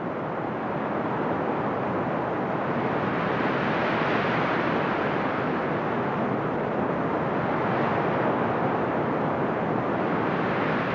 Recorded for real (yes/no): yes